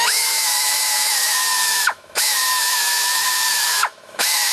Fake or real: fake